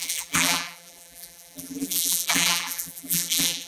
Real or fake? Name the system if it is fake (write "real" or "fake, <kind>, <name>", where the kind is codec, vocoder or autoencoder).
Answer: fake, vocoder, BigVGAN v2